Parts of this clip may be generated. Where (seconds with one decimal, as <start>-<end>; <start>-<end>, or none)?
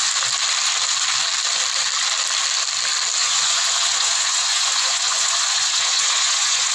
3.2-6.7